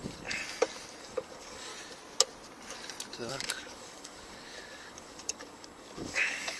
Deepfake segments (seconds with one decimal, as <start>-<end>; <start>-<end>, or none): 0.0-0.4; 1.0-1.7; 3.3-6.6